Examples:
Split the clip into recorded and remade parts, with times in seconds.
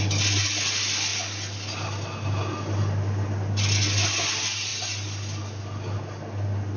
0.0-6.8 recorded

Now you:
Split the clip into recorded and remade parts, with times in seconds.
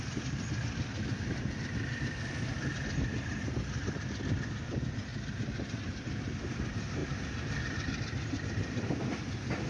0.0-9.7 remade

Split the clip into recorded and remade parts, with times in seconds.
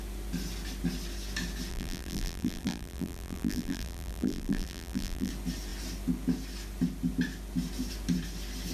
0.0-1.7 recorded; 1.7-5.3 remade; 5.3-8.7 recorded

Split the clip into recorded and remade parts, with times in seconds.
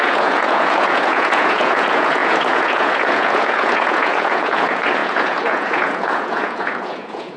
0.0-7.4 remade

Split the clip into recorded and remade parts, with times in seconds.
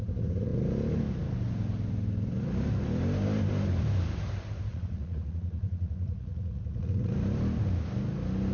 0.0-4.7 recorded; 4.7-7.1 remade; 7.1-8.5 recorded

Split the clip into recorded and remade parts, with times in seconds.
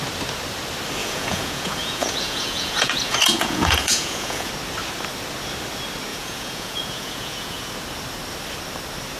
0.0-1.0 recorded; 1.0-4.5 remade; 4.5-6.1 recorded; 6.1-7.7 remade; 7.7-9.2 recorded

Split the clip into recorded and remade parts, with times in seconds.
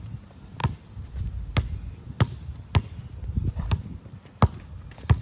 0.0-5.2 recorded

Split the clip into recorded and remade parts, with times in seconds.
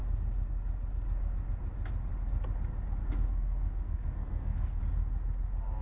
0.0-3.0 recorded; 3.0-4.8 remade; 4.8-5.8 recorded